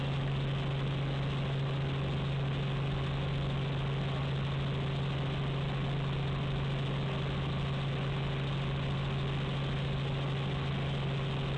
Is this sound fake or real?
real